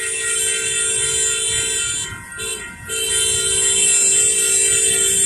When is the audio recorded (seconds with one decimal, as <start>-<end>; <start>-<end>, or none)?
0.0-5.3